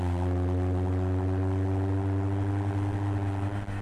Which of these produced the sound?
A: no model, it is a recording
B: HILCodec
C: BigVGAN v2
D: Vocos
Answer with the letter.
A